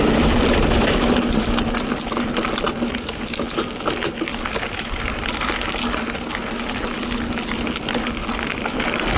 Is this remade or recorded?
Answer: recorded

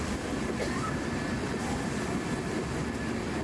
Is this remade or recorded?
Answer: recorded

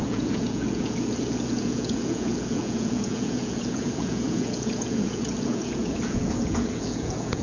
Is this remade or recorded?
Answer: remade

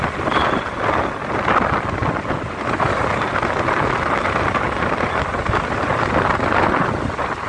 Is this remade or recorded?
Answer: recorded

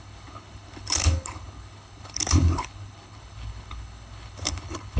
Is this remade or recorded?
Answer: remade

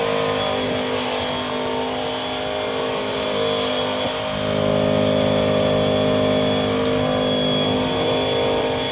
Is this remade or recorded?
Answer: recorded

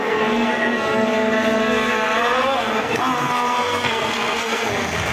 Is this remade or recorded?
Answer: remade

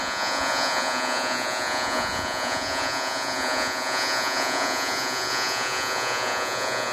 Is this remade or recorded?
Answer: remade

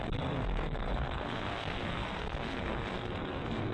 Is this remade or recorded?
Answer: remade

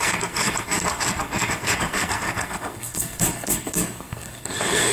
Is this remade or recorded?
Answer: remade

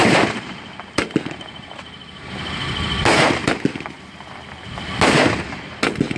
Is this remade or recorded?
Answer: recorded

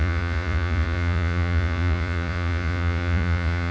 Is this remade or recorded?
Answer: remade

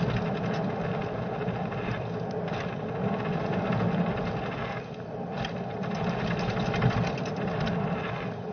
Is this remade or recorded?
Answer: recorded